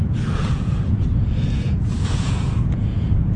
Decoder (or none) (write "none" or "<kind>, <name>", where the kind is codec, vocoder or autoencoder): vocoder, Vocos